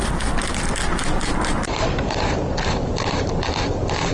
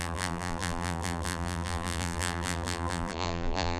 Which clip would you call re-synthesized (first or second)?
second